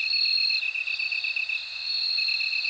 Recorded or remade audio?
recorded